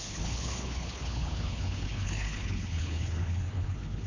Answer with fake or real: fake